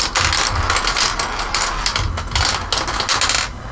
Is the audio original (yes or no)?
yes